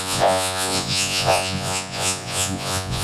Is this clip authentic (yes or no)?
no